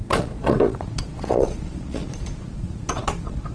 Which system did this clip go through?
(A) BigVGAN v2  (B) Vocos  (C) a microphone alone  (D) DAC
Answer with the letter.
B